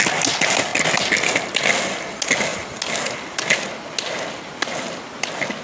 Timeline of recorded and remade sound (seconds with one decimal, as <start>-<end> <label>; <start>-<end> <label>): 0.0-5.6 recorded